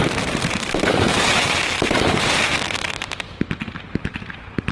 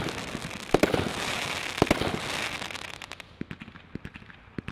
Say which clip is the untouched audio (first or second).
second